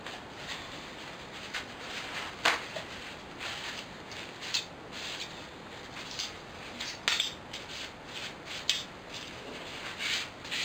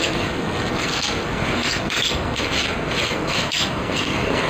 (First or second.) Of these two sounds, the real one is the first